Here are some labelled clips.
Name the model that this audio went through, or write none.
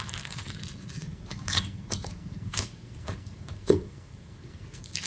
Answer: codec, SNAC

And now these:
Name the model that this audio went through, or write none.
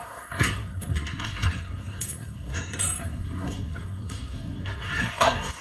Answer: codec, SNAC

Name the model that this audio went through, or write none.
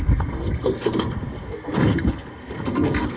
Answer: codec, SNAC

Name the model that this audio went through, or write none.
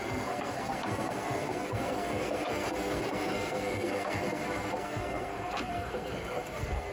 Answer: codec, SNAC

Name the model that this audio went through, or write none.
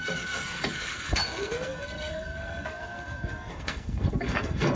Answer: codec, SNAC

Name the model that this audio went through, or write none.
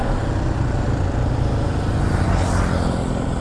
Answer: none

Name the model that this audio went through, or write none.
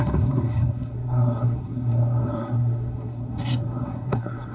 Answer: codec, SNAC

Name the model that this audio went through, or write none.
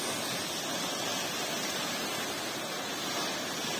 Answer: none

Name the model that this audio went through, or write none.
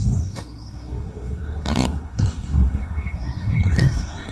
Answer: codec, SNAC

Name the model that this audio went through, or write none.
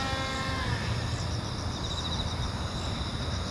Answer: none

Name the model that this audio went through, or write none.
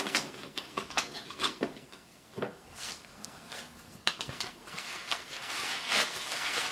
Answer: codec, SNAC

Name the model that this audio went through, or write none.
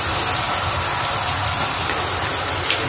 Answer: none